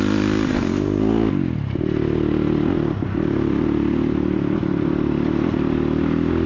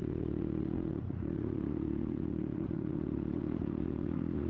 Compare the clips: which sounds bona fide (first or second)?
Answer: first